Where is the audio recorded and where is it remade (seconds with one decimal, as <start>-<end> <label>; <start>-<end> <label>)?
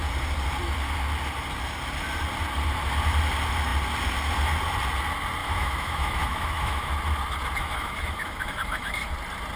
0.0-5.4 recorded; 5.4-6.9 remade; 6.9-7.6 recorded; 7.6-9.1 remade; 9.1-9.6 recorded